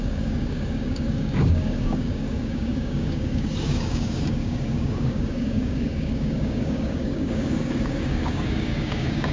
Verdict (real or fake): fake